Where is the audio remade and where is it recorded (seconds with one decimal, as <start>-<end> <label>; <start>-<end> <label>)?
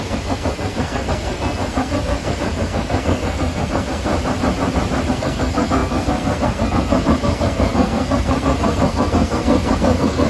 0.0-4.1 remade; 4.1-5.1 recorded; 5.1-10.3 remade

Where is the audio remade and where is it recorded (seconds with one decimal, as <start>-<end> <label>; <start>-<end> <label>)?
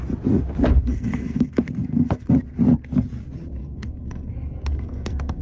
0.0-0.8 recorded; 0.8-2.3 remade; 2.3-3.6 recorded; 3.6-4.3 remade; 4.3-4.7 recorded; 4.7-5.4 remade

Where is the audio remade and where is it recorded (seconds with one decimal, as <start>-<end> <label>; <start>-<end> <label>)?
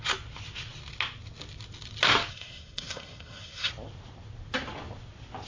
0.0-2.3 recorded; 2.3-3.7 remade; 3.7-5.5 recorded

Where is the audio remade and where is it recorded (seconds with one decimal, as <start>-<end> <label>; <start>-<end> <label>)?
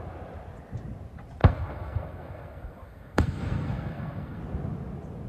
0.0-1.4 recorded; 1.4-4.4 remade; 4.4-5.3 recorded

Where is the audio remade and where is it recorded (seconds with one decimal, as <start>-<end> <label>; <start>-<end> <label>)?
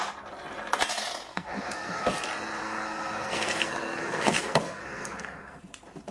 0.0-1.3 recorded; 1.3-2.1 remade; 2.1-2.6 recorded; 2.6-5.6 remade; 5.6-6.1 recorded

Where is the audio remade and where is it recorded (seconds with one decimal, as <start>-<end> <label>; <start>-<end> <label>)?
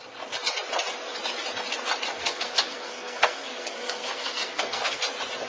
0.0-2.1 recorded; 2.1-5.0 remade; 5.0-5.5 recorded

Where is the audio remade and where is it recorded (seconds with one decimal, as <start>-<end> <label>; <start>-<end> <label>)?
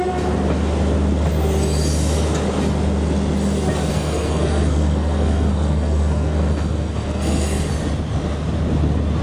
0.0-3.9 recorded; 3.9-7.7 remade; 7.7-9.2 recorded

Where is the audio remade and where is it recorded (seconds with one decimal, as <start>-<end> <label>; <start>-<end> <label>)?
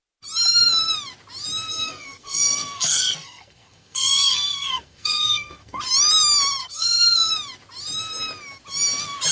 0.0-1.7 recorded; 1.7-5.8 remade; 5.8-6.6 recorded; 6.6-7.3 remade; 7.3-9.3 recorded